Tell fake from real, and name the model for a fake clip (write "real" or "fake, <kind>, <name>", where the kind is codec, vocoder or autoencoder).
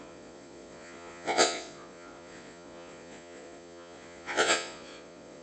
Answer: fake, vocoder, Vocos